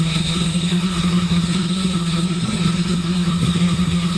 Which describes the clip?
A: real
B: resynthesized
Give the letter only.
B